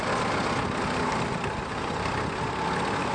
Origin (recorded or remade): recorded